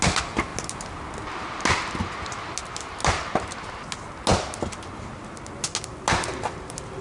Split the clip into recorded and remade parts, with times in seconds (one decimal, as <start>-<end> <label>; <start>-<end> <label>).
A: 0.0-7.0 recorded

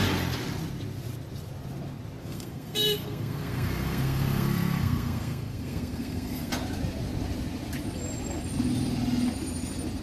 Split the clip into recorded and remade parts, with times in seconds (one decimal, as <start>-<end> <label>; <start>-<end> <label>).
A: 0.0-2.2 recorded; 2.2-6.5 remade; 6.5-10.0 recorded